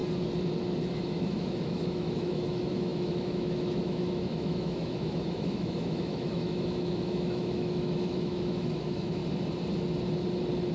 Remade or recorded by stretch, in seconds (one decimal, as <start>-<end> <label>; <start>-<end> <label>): 0.0-0.9 recorded; 0.9-9.2 remade; 9.2-10.7 recorded